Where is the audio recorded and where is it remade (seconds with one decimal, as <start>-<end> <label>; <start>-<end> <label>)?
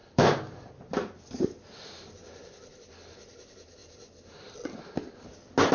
0.0-1.2 remade; 1.2-5.7 recorded